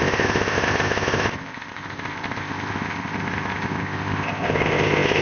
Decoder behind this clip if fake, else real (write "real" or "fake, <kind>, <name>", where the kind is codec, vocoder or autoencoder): fake, codec, ZipCodec